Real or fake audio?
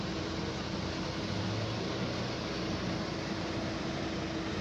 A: real